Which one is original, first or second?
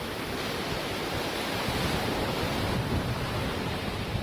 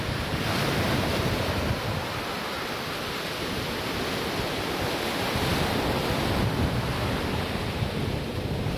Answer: second